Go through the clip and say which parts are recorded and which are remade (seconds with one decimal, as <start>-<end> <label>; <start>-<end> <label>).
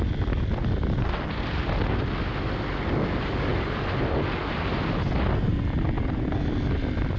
0.0-7.2 recorded